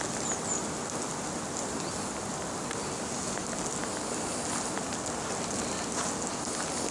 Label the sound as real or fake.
real